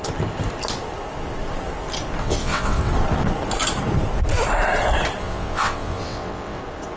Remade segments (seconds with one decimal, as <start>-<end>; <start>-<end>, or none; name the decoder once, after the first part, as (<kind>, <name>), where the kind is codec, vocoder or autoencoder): 2.2-2.9 (vocoder, WaveNeXt); 5.2-6.6